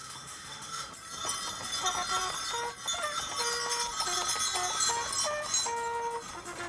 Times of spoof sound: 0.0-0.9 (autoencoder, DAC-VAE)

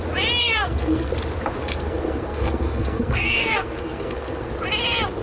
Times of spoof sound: 0.4-1.1 (codec, SNAC); 1.6-4.5

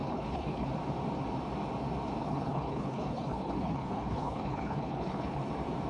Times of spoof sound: 0.0-0.7 (codec, HILCodec); 2.2-5.5

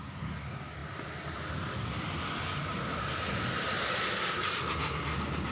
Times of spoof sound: none

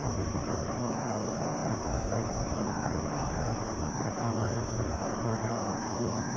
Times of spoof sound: 0.0-6.4 (codec, SNAC)

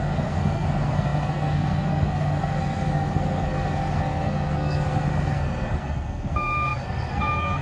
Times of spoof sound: 0.0-7.6 (codec, SNAC)

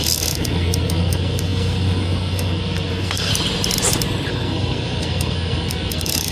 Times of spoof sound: 0.0-3.3 (codec, SNAC); 4.3-6.3